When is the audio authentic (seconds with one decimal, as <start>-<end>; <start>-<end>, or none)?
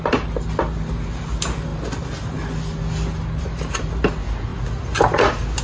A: 0.0-5.6